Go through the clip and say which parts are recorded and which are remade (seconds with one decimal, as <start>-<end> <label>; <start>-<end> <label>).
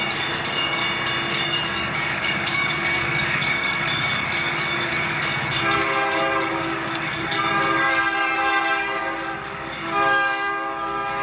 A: 0.0-0.8 remade; 0.8-1.3 recorded; 1.3-11.2 remade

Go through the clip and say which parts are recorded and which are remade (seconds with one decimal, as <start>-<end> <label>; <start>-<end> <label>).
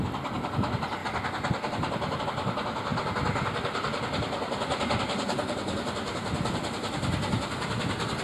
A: 0.0-8.2 recorded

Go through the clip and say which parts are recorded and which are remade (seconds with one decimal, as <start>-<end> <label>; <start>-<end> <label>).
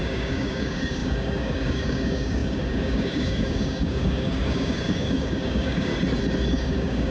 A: 0.0-5.9 remade; 5.9-6.5 recorded; 6.5-7.1 remade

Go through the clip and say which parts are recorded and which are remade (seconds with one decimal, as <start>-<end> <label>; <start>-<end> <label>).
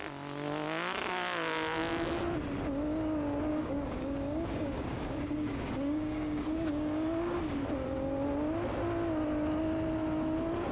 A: 0.0-3.5 recorded; 3.5-7.4 remade; 7.4-10.7 recorded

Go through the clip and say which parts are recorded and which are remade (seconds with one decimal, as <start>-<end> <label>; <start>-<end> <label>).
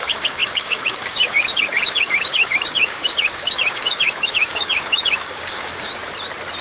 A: 0.0-6.0 remade; 6.0-6.6 recorded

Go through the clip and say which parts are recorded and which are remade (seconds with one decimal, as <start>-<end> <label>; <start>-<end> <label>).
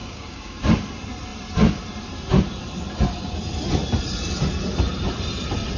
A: 0.0-0.6 remade; 0.6-5.8 recorded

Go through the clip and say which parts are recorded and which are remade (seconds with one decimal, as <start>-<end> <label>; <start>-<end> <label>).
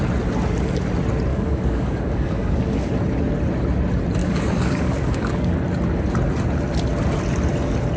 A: 0.0-1.3 recorded; 1.3-2.9 remade; 2.9-4.2 recorded; 4.2-5.5 remade; 5.5-8.0 recorded